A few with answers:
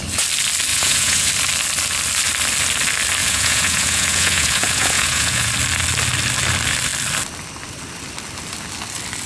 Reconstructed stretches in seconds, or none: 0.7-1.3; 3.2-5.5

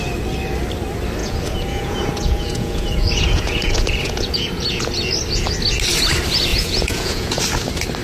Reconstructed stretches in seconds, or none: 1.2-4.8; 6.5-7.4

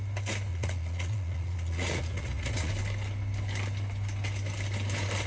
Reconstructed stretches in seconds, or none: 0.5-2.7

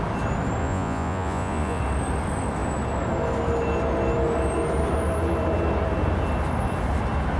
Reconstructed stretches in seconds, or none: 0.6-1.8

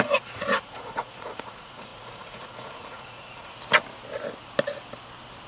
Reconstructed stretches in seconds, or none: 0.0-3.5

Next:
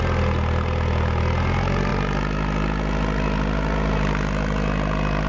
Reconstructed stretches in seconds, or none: none

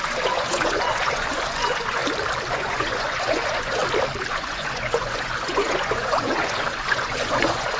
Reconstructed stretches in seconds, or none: 0.0-2.0; 2.5-3.8; 4.3-7.8

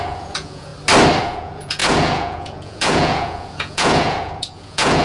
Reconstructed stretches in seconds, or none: 0.0-0.7; 1.2-5.0